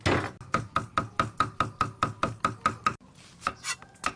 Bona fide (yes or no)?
yes